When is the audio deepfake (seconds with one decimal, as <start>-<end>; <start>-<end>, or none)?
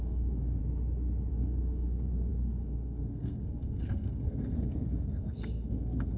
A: 0.0-0.6; 1.3-6.2